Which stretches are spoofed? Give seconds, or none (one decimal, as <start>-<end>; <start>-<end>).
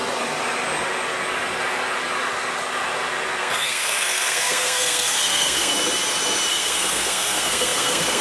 3.4-5.7; 6.5-8.2